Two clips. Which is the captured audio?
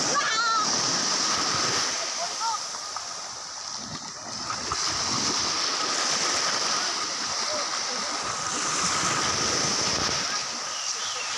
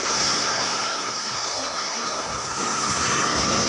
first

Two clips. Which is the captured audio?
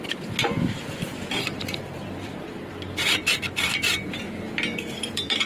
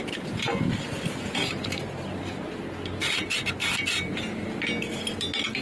second